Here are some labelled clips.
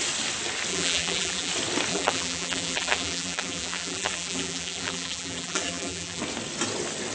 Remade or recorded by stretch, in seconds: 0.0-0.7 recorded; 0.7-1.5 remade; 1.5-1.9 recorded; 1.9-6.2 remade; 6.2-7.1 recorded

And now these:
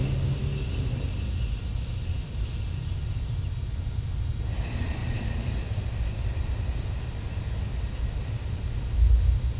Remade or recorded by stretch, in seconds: 0.0-5.0 recorded; 5.0-5.8 remade; 5.8-9.6 recorded

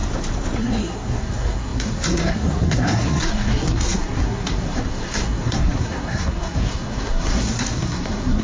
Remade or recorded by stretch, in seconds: 0.0-0.6 recorded; 0.6-8.4 remade